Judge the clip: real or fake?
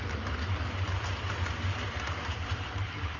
fake